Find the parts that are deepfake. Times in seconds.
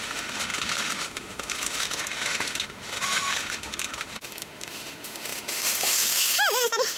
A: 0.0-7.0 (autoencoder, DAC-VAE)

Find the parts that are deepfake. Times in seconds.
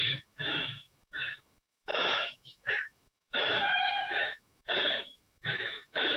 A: 0.0-6.2 (autoencoder, DAC-VAE)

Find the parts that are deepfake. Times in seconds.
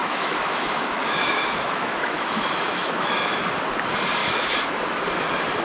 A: 0.0-3.4 (autoencoder, DAC-VAE); 4.2-5.0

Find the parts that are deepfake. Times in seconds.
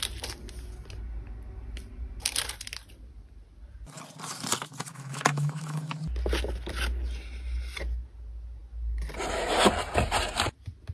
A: 4.9-6.0 (autoencoder, DAC-VAE)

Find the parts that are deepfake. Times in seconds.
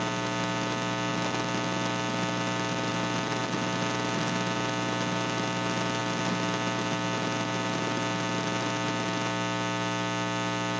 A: none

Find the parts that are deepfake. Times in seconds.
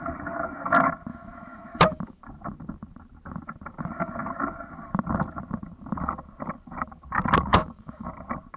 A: 1.1-2.2 (autoencoder, DAC-VAE); 7.5-8.1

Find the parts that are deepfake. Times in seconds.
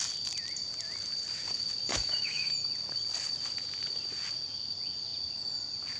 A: 1.9-2.5 (autoencoder, DAC-VAE)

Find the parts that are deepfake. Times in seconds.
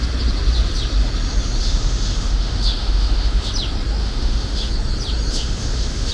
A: 1.6-3.5 (autoencoder, DAC-VAE); 4.0-4.7; 5.3-6.1